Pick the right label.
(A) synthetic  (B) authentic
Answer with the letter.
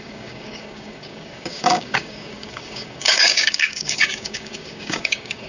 A